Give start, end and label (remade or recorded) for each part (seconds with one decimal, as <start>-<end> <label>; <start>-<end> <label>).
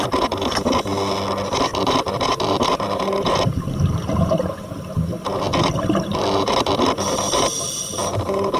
0.0-1.7 recorded; 1.7-3.0 remade; 3.0-5.5 recorded; 5.5-6.7 remade; 6.7-8.6 recorded